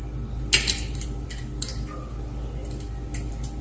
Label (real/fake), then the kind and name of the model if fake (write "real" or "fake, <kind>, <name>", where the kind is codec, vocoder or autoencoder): real